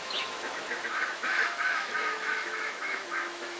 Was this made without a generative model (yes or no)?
no